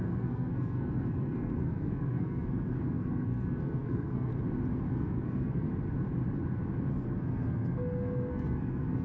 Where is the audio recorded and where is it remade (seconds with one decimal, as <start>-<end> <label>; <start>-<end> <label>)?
0.0-4.3 remade; 4.3-4.9 recorded; 4.9-5.7 remade; 5.7-6.9 recorded; 6.9-9.0 remade